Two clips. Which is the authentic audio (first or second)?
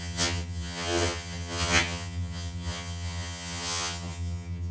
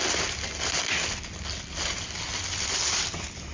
second